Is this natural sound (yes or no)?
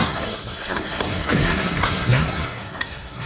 no